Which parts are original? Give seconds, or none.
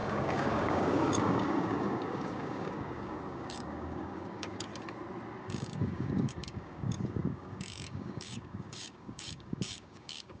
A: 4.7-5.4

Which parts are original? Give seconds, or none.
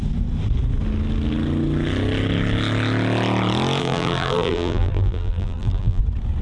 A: 0.0-3.8; 6.0-6.4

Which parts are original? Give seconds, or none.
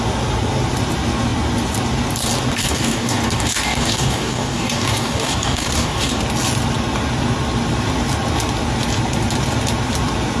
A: 0.0-2.6; 6.2-10.4